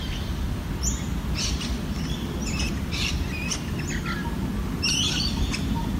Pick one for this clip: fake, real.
real